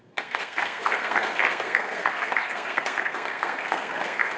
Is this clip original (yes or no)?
no